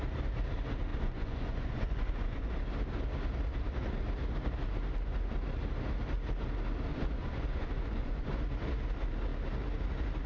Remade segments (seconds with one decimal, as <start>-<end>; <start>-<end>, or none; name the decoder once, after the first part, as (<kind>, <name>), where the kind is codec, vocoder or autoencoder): 0.9-2.5 (vocoder, Vocos); 6.9-8.5